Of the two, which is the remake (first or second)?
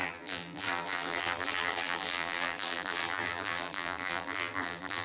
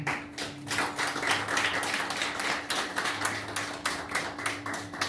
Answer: first